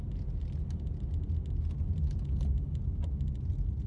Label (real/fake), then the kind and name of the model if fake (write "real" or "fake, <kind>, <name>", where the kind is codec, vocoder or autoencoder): real